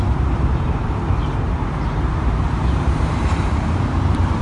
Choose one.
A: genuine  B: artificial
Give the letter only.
B